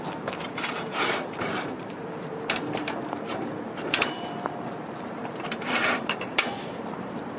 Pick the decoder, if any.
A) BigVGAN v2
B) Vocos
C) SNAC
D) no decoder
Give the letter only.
A